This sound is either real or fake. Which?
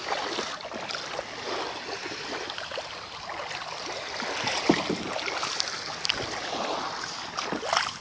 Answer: real